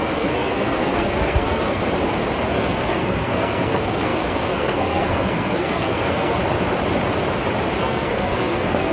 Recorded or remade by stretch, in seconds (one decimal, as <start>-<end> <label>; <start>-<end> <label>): 0.0-1.8 remade; 1.8-2.5 recorded; 2.5-6.4 remade; 6.4-7.8 recorded; 7.8-8.9 remade